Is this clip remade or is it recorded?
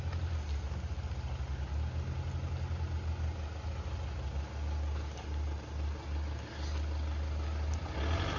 recorded